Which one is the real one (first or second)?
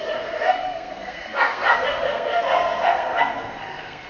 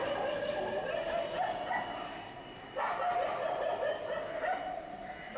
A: second